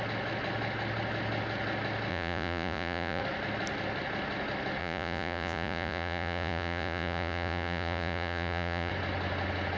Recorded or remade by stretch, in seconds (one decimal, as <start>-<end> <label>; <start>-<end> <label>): 0.0-2.1 recorded; 2.1-3.2 remade; 3.2-4.8 recorded; 4.8-8.9 remade; 8.9-9.8 recorded

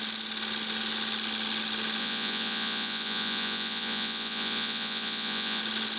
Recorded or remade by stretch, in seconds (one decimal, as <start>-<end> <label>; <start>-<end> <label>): 0.0-2.0 recorded; 2.0-5.6 remade; 5.6-6.0 recorded

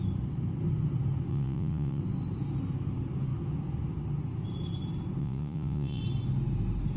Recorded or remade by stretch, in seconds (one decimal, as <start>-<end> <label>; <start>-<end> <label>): 0.0-1.3 recorded; 1.3-2.0 remade; 2.0-5.2 recorded; 5.2-6.0 remade; 6.0-7.0 recorded

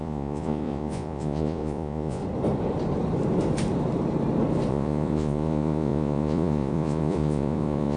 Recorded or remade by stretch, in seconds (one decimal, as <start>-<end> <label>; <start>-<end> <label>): 0.0-2.2 remade; 2.2-4.7 recorded; 4.7-8.0 remade